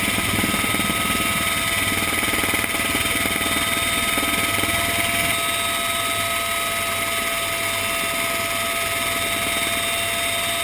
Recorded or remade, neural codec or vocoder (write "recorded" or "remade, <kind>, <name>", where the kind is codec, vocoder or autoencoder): recorded